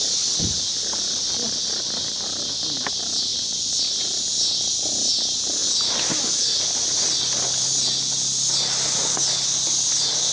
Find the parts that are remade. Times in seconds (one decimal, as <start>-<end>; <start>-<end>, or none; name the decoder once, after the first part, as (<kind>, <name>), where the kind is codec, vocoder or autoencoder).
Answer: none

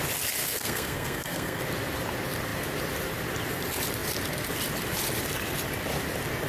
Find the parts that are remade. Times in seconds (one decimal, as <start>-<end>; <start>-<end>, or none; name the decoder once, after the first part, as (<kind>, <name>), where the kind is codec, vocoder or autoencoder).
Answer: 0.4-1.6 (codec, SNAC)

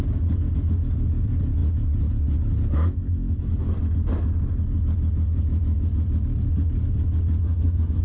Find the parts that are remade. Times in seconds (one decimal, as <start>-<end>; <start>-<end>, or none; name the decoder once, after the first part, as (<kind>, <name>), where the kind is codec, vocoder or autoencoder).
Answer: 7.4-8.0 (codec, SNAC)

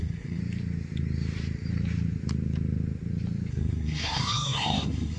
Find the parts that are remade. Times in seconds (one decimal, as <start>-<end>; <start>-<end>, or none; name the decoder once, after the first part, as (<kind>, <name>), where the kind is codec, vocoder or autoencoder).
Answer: 0.0-0.4 (codec, SNAC); 3.5-5.2

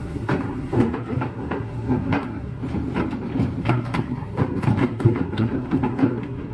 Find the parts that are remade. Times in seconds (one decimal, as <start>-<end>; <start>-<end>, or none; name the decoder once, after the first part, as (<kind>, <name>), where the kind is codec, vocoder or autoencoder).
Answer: 0.0-2.6 (codec, SNAC); 3.6-6.5

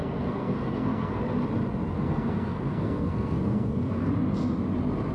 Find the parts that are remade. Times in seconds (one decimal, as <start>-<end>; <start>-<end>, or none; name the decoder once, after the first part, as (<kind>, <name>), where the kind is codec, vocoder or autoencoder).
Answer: 0.0-1.2 (codec, SNAC); 1.9-4.1

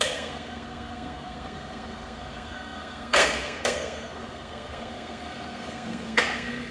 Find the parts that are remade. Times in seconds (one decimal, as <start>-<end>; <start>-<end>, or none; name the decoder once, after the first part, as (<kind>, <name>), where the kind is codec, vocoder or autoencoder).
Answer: 0.0-6.7 (codec, SNAC)